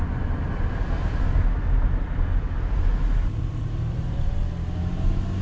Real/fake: real